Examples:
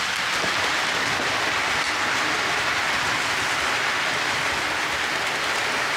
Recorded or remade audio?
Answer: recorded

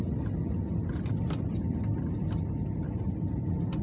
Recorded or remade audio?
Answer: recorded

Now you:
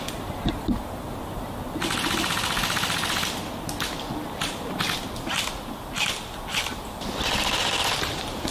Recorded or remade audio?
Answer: recorded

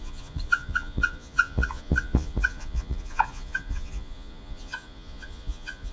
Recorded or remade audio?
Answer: remade